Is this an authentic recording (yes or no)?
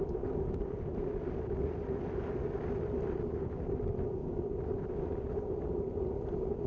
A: yes